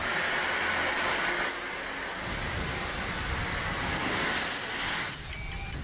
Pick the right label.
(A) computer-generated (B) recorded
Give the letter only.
B